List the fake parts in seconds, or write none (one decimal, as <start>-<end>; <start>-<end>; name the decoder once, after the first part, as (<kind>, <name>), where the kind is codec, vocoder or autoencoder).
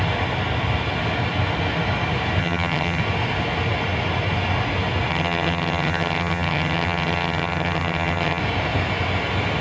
2.4-3.0 (vocoder, HiFi-GAN); 5.1-8.4